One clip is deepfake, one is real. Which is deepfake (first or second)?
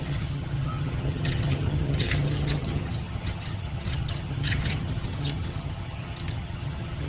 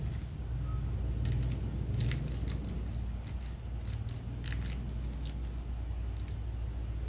first